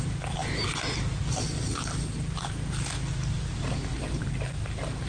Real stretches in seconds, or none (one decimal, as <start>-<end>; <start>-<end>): 0.0-5.1